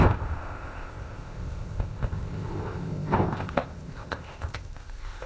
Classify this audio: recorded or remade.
remade